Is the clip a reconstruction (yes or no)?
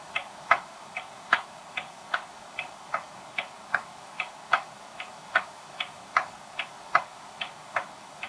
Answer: yes